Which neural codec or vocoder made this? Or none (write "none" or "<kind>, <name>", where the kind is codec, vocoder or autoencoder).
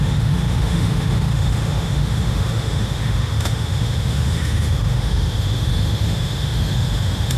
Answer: autoencoder, DAC-VAE